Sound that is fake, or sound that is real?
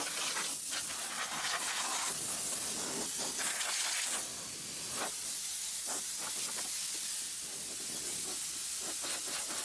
real